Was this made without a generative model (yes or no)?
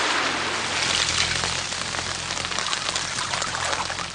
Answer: yes